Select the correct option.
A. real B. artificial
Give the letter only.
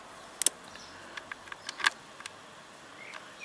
A